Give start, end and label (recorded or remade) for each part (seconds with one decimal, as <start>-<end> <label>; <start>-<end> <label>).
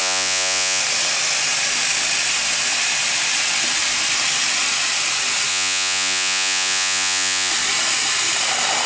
0.0-0.8 remade; 0.8-5.5 recorded; 5.5-7.5 remade; 7.5-8.9 recorded